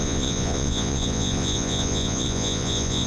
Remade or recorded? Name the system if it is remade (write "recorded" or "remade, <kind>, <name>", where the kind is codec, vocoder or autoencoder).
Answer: remade, vocoder, Vocos